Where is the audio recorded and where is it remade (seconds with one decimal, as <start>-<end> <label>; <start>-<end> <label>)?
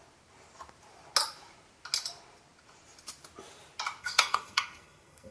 0.0-4.0 recorded; 4.0-5.3 remade